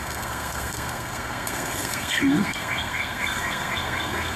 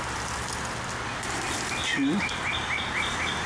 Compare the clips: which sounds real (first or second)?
second